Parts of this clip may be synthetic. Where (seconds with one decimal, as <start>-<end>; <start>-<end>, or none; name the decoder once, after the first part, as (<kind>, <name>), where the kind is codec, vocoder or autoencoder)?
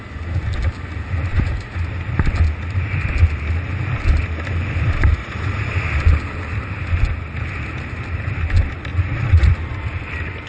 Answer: 1.3-1.8 (vocoder, Vocos); 5.1-5.7; 8.9-9.5